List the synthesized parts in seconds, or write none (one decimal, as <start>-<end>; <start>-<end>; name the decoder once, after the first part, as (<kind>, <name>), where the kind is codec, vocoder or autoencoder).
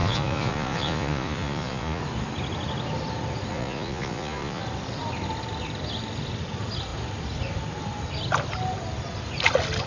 0.0-2.0 (vocoder, Vocos); 3.5-4.6